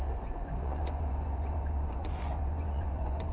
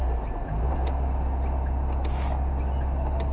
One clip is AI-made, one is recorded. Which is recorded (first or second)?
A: second